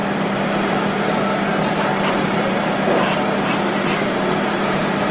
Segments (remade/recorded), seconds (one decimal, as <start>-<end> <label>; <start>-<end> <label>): 0.0-1.9 recorded; 1.9-2.5 remade; 2.5-4.0 recorded; 4.0-5.1 remade